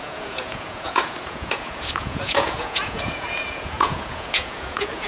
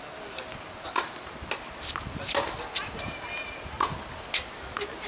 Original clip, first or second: second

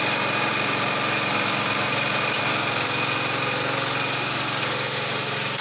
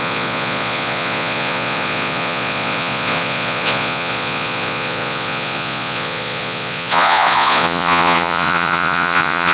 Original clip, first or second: first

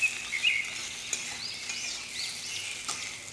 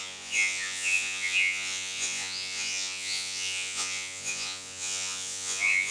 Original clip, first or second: first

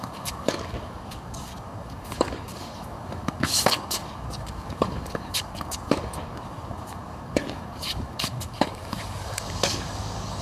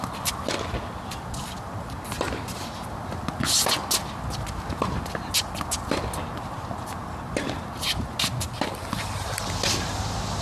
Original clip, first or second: second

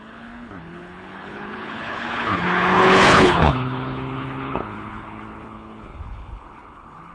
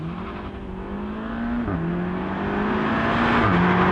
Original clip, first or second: second